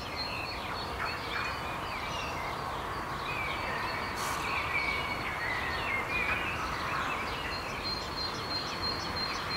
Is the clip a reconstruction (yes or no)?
no